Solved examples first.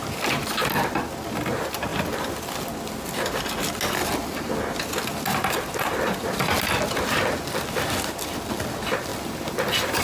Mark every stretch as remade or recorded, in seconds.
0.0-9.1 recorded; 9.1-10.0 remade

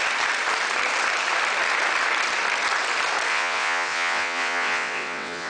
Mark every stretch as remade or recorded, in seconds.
0.0-3.3 recorded; 3.3-5.5 remade